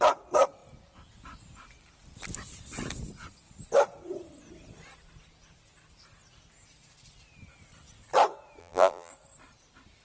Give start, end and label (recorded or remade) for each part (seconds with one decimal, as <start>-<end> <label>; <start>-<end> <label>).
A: 0.0-8.6 recorded; 8.6-9.1 remade; 9.1-10.0 recorded

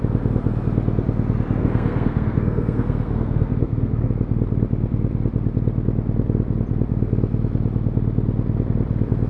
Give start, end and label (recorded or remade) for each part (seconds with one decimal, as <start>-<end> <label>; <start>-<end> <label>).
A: 0.0-1.6 recorded; 1.6-4.1 remade; 4.1-9.3 recorded

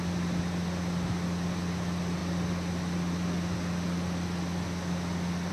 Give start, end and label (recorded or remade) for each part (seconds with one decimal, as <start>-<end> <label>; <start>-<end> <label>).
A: 0.0-5.5 recorded